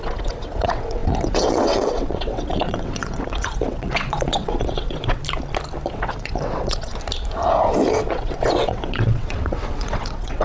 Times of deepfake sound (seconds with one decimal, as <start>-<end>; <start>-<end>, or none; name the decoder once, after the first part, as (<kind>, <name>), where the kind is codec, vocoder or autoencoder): 0.0-5.2 (vocoder, WaveNeXt); 5.9-6.9; 8.1-10.4